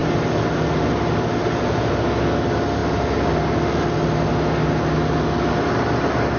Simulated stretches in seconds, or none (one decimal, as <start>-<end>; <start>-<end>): none